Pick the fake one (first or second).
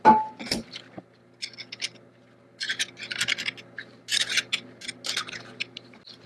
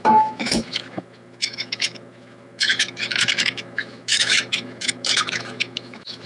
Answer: second